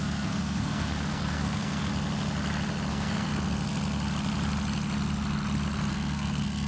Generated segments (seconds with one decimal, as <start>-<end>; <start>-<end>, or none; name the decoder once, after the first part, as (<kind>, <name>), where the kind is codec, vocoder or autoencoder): 0.0-1.9 (codec, SNAC); 2.9-3.3; 5.9-6.7